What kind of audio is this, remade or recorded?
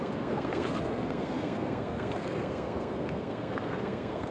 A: remade